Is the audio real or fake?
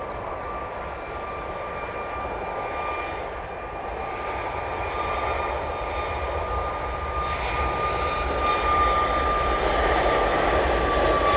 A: real